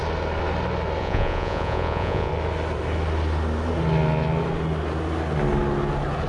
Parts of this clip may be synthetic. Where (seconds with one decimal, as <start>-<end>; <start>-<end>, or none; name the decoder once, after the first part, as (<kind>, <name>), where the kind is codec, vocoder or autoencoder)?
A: 1.0-2.3 (vocoder, Vocos)